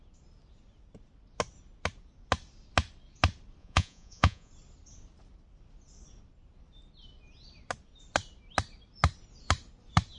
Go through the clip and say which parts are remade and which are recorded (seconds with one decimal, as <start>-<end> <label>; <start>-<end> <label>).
0.0-3.6 recorded; 3.6-4.5 remade; 4.5-10.2 recorded